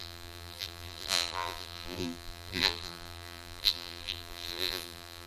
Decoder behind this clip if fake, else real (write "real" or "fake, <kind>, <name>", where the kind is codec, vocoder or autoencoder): fake, vocoder, BigVGAN v2